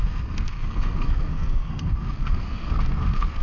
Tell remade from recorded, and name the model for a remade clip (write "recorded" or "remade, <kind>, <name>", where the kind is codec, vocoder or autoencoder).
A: remade, codec, SNAC